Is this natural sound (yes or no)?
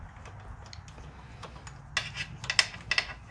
yes